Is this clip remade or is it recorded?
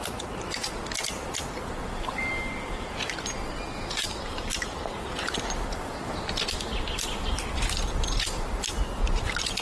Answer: recorded